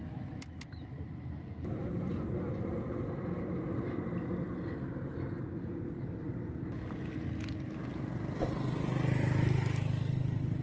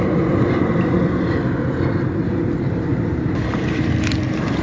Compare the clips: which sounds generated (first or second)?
second